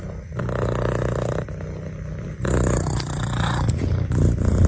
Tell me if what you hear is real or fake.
real